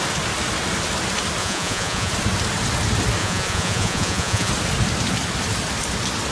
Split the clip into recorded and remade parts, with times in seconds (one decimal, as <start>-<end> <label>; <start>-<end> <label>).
0.0-1.4 recorded; 1.4-2.1 remade; 2.1-3.2 recorded; 3.2-4.5 remade; 4.5-6.3 recorded